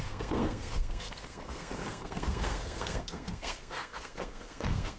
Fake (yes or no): yes